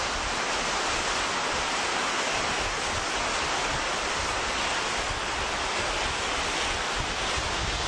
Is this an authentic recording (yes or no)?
yes